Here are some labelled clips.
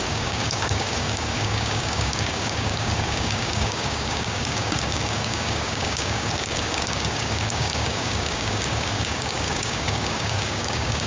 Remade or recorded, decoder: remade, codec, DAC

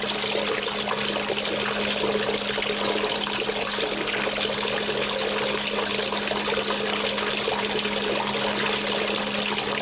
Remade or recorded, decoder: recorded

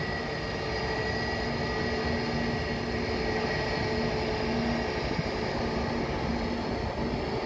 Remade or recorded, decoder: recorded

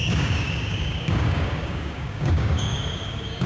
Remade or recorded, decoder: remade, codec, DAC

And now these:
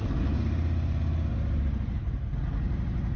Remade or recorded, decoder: recorded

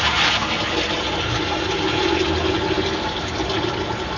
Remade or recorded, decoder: recorded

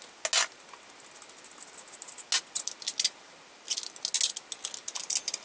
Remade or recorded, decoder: recorded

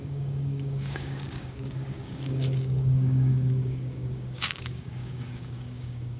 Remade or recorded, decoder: remade, codec, DAC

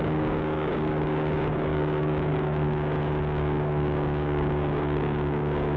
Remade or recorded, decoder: remade, codec, DAC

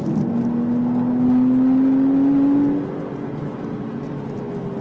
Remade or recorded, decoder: recorded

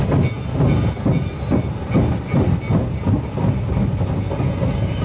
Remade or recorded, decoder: recorded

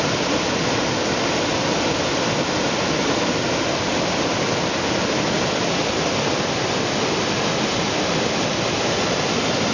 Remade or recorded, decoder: recorded